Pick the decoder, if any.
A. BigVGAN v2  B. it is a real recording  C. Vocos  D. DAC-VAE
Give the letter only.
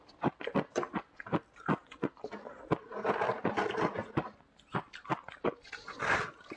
B